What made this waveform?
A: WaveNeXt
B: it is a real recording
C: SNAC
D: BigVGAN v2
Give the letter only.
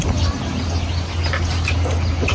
B